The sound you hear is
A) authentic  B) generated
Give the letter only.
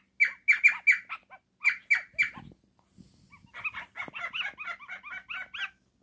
A